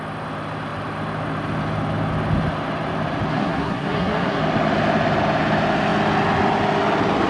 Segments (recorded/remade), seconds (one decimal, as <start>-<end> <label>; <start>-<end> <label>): 0.0-3.3 recorded; 3.3-4.4 remade; 4.4-7.3 recorded